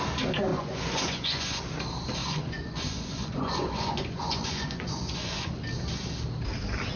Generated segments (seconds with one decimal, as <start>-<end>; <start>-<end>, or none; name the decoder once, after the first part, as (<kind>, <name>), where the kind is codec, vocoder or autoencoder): 0.5-1.6 (vocoder, Vocos); 2.2-5.5